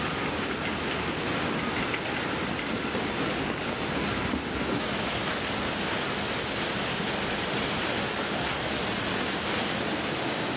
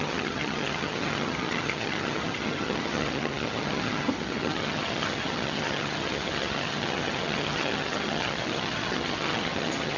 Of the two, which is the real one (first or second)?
first